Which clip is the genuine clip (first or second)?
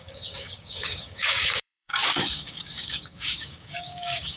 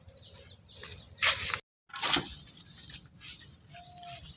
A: second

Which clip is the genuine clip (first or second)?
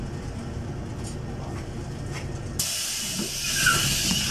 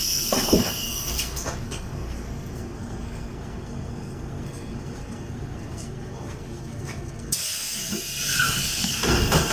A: first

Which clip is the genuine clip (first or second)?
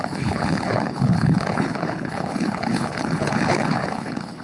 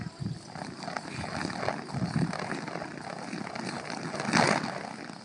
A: second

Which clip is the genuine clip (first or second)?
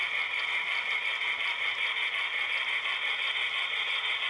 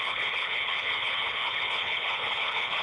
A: first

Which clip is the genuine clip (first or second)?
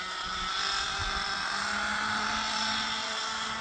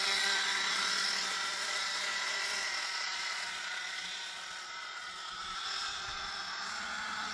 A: first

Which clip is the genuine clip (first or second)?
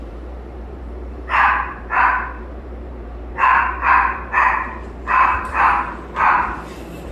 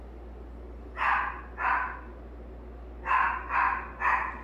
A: second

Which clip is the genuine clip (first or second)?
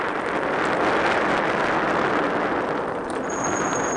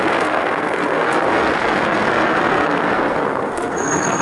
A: first